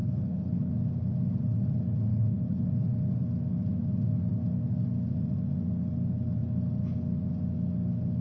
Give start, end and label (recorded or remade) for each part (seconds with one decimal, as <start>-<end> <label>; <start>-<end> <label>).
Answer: 0.0-0.7 remade; 0.7-2.1 recorded; 2.1-2.7 remade; 2.7-8.2 recorded